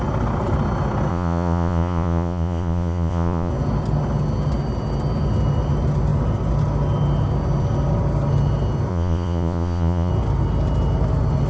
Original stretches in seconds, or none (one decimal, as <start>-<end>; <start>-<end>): 0.0-1.1; 3.5-8.9; 10.1-11.5